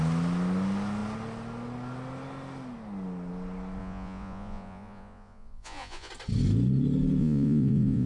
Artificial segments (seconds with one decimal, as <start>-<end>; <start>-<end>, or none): 3.8-6.1; 7.2-8.1